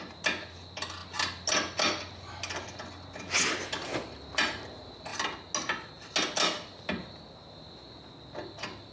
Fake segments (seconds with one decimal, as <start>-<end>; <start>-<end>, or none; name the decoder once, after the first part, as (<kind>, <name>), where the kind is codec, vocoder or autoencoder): 1.0-3.1 (vocoder, BigVGAN v2)